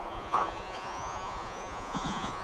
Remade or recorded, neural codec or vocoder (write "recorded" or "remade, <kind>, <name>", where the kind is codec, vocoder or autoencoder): remade, vocoder, Vocos